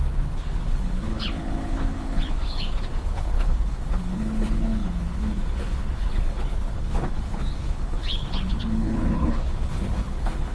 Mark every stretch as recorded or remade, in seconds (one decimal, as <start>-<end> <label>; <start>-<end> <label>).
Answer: 0.0-10.5 remade